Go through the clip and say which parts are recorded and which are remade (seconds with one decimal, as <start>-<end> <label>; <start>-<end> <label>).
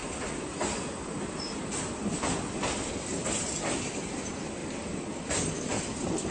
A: 0.0-6.3 recorded